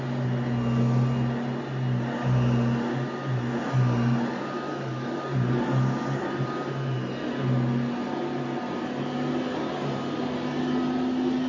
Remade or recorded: recorded